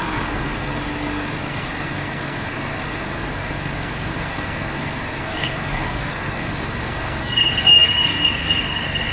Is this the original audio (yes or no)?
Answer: no